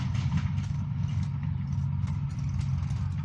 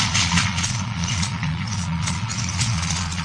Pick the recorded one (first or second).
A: first